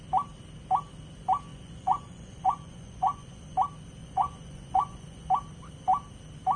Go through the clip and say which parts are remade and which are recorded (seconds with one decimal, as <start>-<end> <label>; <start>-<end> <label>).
0.0-1.5 recorded; 1.5-3.4 remade; 3.4-4.0 recorded; 4.0-5.3 remade; 5.3-6.6 recorded